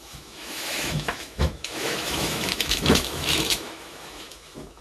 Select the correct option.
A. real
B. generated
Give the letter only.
B